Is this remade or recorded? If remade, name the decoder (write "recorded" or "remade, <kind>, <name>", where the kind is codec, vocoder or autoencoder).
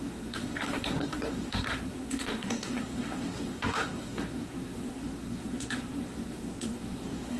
remade, codec, SNAC